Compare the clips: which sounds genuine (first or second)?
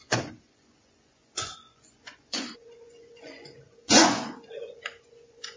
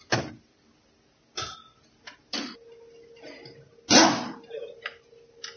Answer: second